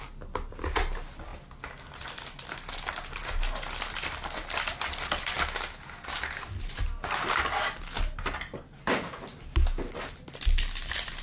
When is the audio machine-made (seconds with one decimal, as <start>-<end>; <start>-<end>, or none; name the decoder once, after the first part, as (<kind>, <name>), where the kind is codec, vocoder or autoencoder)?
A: none